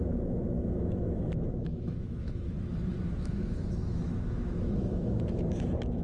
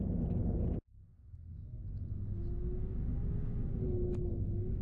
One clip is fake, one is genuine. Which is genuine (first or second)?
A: second